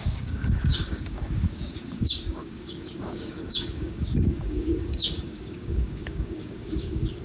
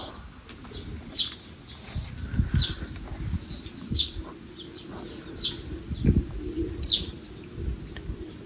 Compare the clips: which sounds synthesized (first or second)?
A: first